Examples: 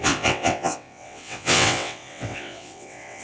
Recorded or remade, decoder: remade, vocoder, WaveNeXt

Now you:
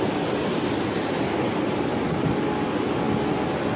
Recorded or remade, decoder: recorded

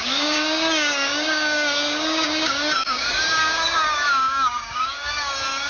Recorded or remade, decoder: remade, codec, DAC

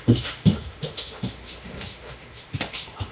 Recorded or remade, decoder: remade, autoencoder, DAC-VAE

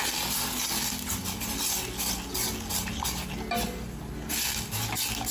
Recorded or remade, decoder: recorded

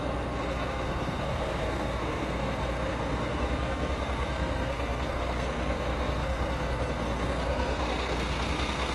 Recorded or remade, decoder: remade, codec, SNAC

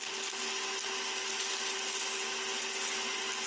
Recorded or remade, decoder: recorded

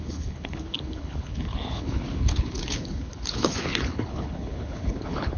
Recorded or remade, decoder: remade, codec, HILCodec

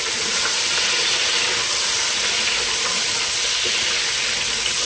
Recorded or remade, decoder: recorded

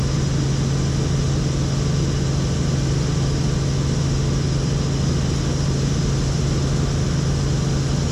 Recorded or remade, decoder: recorded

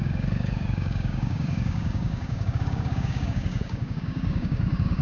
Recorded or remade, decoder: remade, codec, DAC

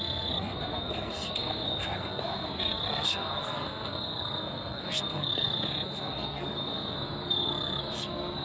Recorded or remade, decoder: remade, codec, SNAC